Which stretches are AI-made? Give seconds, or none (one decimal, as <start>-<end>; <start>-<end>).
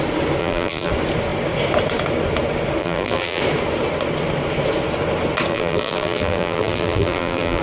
0.4-0.9; 2.8-3.4; 5.5-7.6